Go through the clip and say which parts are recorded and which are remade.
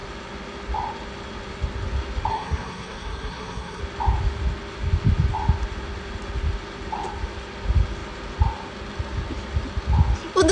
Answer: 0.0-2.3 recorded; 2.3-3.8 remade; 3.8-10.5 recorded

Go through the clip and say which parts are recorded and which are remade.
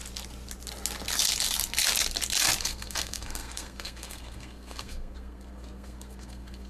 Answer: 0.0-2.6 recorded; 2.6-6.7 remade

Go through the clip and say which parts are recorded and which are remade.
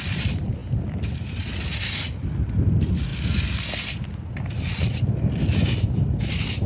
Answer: 0.0-6.7 recorded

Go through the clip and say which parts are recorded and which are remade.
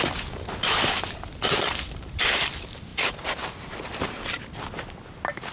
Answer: 0.0-2.9 recorded; 2.9-4.1 remade; 4.1-5.5 recorded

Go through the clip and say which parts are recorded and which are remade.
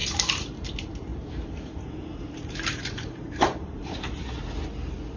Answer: 0.0-0.7 remade; 0.7-1.1 recorded; 1.1-4.2 remade; 4.2-5.2 recorded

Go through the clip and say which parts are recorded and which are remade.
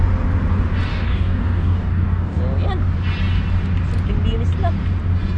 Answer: 0.0-0.9 recorded; 0.9-2.4 remade; 2.4-5.4 recorded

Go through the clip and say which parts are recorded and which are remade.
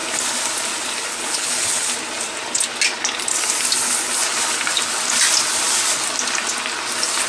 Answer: 0.0-1.1 recorded; 1.1-1.9 remade; 1.9-7.3 recorded